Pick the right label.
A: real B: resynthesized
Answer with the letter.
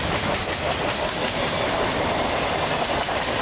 A